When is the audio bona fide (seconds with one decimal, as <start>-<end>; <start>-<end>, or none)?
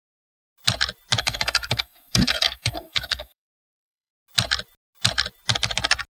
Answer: 0.0-1.2; 4.1-6.1